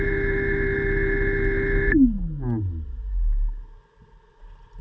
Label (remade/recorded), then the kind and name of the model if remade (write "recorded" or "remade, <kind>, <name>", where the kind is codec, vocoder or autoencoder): recorded